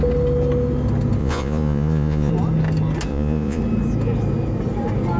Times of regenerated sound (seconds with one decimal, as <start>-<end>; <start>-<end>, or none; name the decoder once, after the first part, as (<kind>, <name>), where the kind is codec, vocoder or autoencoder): 1.2-2.3 (vocoder, Vocos); 3.1-3.6

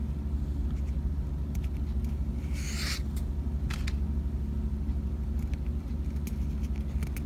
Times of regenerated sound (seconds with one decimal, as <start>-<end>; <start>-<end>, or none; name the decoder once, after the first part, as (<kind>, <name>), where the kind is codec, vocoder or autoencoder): none

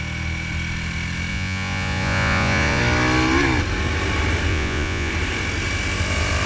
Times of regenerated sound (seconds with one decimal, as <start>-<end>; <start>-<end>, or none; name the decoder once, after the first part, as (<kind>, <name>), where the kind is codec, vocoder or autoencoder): 1.3-2.8 (vocoder, Vocos); 4.5-5.1

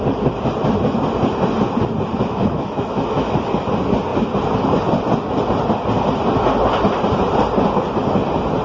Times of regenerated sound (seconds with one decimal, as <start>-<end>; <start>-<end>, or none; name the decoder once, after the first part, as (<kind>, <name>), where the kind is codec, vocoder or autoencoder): 2.1-3.3 (autoencoder, DAC-VAE)

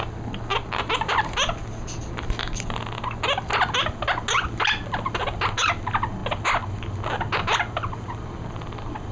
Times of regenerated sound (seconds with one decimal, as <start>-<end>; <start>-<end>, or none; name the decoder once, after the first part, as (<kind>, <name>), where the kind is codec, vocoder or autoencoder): none

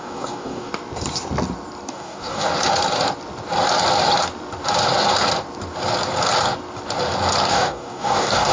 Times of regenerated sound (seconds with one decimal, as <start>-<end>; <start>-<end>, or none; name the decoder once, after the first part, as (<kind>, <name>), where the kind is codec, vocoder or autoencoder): 0.0-0.7 (codec, DAC); 1.9-2.5; 7.5-8.5

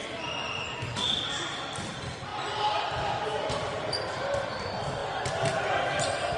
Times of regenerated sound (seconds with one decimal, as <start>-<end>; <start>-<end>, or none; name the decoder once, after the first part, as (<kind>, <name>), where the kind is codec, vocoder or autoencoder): 0.0-6.4 (vocoder, BigVGAN v2)